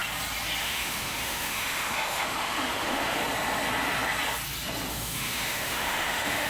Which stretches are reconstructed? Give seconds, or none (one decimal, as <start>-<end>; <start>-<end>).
0.6-3.2; 4.9-6.5